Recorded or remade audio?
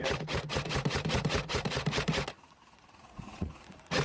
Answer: remade